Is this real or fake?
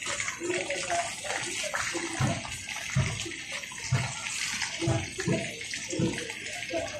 real